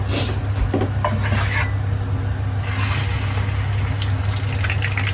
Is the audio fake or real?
real